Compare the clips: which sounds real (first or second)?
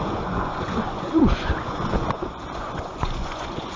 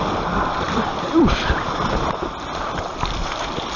second